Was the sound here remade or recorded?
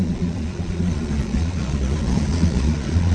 remade